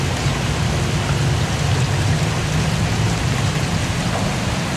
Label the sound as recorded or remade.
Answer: recorded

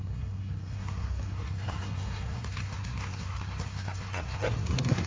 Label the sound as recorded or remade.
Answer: remade